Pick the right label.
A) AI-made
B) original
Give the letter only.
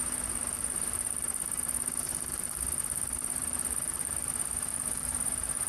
A